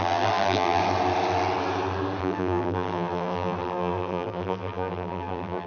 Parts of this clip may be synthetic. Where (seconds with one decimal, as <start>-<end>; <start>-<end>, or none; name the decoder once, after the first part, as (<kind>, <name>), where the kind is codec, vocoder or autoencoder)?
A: 0.0-0.8 (vocoder, BigVGAN v2); 2.2-5.7